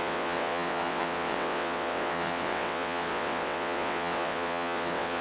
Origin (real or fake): fake